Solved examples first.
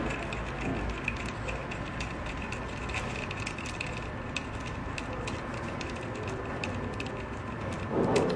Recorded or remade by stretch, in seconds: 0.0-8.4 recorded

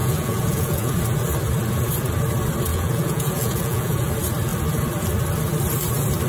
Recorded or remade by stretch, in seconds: 0.0-1.0 remade; 1.0-2.7 recorded; 2.7-4.1 remade; 4.1-6.3 recorded

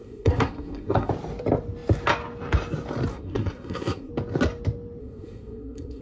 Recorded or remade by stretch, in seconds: 0.0-1.1 remade; 1.1-3.1 recorded; 3.1-4.1 remade; 4.1-5.0 recorded; 5.0-6.0 remade